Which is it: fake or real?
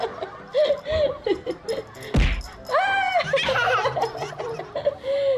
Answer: real